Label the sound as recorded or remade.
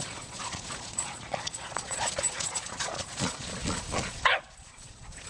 remade